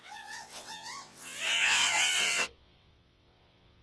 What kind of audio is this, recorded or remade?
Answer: remade